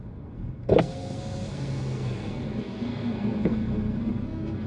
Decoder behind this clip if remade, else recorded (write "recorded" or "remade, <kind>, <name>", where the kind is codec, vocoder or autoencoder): remade, codec, SNAC